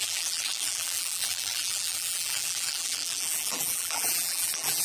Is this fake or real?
fake